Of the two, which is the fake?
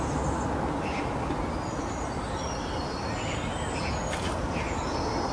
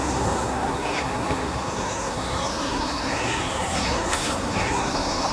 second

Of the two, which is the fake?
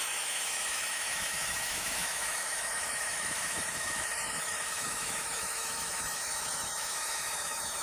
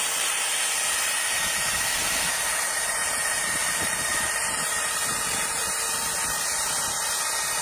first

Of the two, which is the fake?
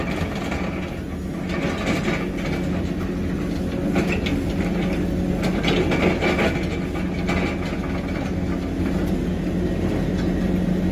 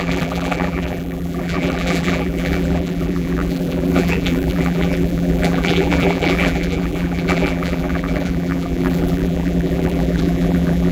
second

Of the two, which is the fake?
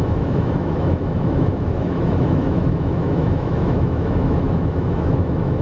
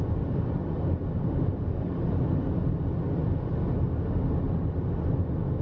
first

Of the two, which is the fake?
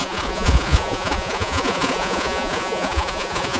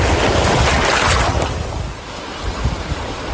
first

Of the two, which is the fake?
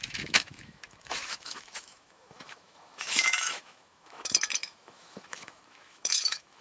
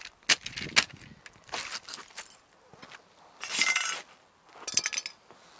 first